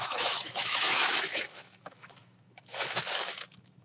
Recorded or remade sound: remade